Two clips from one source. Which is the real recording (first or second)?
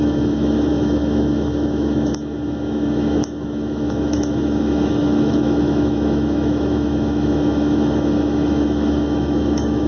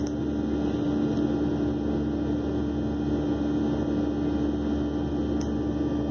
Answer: second